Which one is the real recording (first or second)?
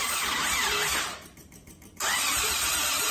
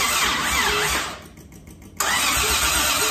second